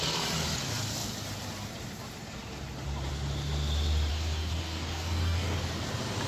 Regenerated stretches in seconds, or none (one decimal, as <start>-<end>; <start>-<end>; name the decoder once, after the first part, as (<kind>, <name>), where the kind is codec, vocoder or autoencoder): 4.1-5.6 (codec, DAC)